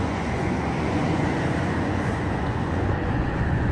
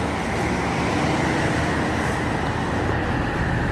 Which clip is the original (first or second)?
second